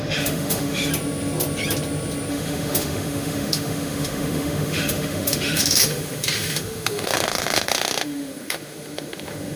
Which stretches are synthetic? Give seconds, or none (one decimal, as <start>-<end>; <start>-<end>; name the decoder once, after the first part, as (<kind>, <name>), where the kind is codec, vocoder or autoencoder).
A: 0.0-0.9 (autoencoder, DAC-VAE); 2.3-9.6